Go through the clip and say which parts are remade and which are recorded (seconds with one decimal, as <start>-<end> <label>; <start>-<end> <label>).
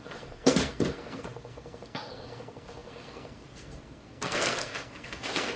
0.0-5.6 remade